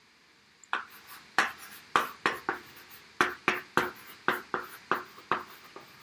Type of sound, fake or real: real